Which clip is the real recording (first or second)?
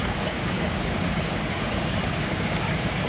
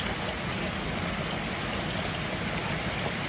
second